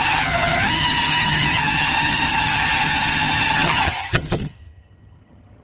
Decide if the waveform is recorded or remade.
remade